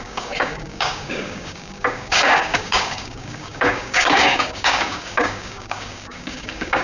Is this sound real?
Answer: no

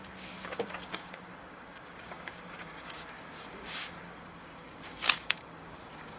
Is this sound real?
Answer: no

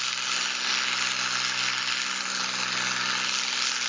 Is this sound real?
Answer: yes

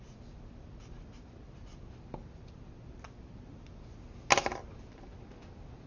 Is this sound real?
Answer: yes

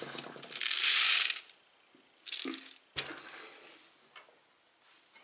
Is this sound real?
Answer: yes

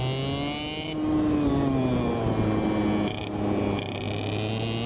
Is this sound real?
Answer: yes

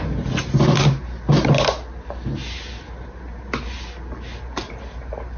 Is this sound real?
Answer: yes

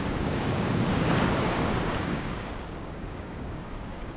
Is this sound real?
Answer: no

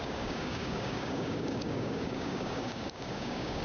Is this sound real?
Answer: no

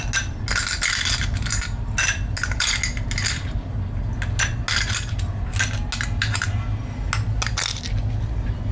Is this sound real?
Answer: yes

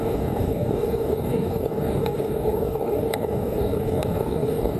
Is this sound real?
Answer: no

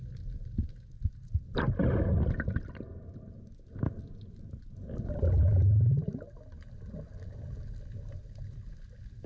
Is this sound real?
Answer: yes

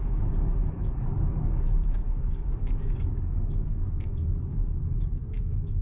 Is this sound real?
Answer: no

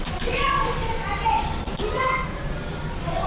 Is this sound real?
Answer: yes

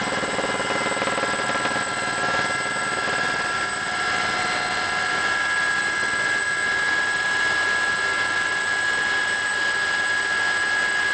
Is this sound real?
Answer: yes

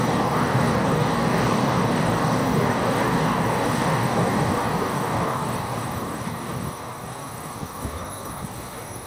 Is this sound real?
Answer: no